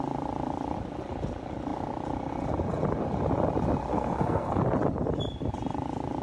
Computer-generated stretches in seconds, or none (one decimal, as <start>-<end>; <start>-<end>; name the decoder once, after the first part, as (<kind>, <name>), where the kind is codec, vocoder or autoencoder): 3.9-4.6 (codec, SNAC)

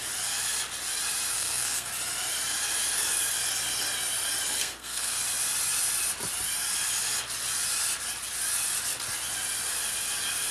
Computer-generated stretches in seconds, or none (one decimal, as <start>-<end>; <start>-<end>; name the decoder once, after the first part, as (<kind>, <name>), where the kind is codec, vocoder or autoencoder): 1.3-1.9 (codec, SNAC); 4.6-5.2